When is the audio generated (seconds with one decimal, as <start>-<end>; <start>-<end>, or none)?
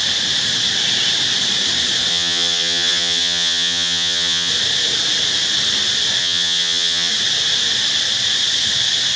2.1-4.5; 6.2-7.1